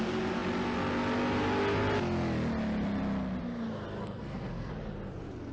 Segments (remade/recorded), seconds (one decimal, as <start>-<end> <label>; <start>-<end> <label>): 0.0-4.0 recorded; 4.0-4.7 remade; 4.7-5.5 recorded